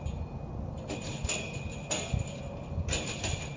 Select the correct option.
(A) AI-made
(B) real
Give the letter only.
B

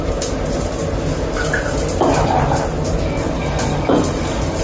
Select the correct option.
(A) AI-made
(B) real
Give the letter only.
B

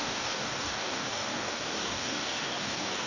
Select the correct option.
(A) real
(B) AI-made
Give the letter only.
B